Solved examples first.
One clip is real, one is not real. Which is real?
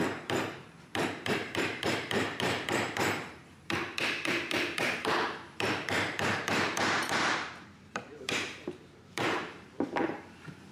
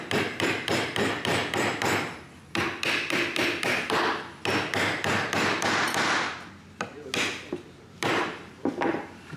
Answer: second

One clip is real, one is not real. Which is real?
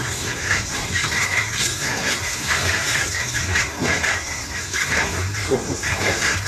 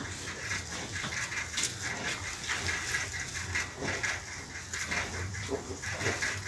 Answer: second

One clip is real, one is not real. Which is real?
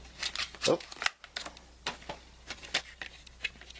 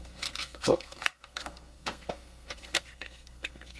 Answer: first